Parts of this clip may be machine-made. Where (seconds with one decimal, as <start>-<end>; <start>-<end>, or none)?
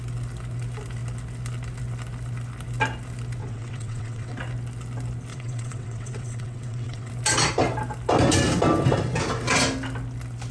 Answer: 3.4-4.4; 5.3-7.1